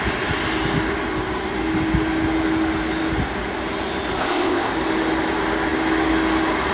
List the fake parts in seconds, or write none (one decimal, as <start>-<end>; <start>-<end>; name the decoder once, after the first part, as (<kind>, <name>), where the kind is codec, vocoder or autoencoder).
4.2-4.7 (codec, ZipCodec)